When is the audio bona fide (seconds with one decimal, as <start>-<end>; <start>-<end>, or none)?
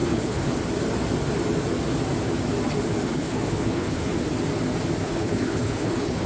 0.6-3.0; 4.1-5.0